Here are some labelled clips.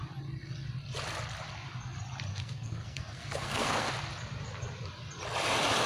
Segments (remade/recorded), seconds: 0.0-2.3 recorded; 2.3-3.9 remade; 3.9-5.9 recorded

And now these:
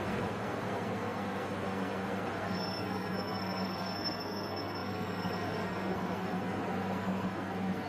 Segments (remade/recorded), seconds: 0.0-7.9 remade

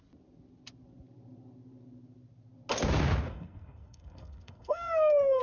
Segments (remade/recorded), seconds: 0.0-3.3 recorded; 3.3-5.4 remade